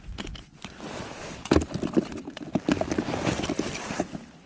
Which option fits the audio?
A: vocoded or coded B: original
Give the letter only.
B